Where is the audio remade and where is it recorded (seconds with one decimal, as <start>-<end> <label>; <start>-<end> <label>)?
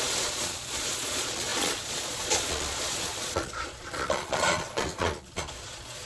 0.0-6.1 remade